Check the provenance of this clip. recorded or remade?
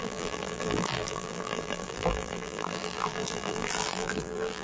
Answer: remade